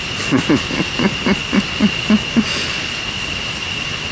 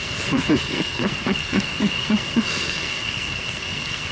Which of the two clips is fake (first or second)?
second